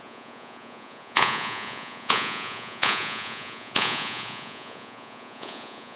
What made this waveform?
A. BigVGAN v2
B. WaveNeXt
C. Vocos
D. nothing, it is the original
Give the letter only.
C